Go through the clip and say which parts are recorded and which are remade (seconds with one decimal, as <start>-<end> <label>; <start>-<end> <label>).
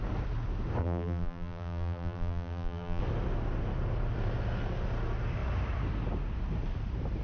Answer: 0.0-0.8 recorded; 0.8-3.0 remade; 3.0-7.2 recorded